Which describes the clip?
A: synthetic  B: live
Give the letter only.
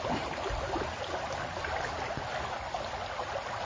B